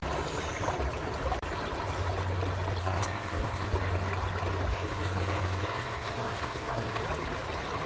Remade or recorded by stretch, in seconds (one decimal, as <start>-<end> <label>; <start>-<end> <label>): 0.0-2.8 recorded; 2.8-3.7 remade; 3.7-4.7 recorded; 4.7-7.0 remade; 7.0-7.9 recorded